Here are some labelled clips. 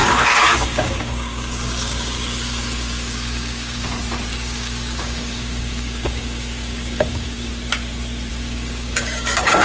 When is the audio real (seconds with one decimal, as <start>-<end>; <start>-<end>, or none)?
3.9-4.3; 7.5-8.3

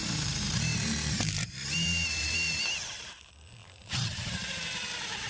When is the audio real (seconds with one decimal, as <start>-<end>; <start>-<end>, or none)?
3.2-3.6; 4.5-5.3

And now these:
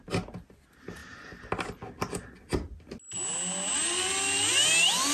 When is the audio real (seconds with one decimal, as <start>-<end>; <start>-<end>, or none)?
0.0-5.1

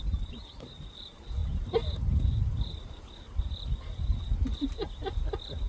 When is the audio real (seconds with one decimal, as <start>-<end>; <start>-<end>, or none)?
0.0-5.7